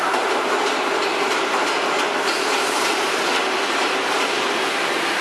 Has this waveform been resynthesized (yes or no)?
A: no